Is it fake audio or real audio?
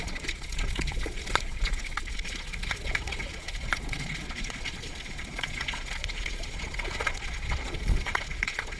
fake